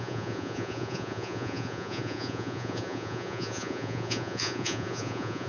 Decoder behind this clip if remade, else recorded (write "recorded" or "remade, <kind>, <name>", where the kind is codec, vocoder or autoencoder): remade, vocoder, Vocos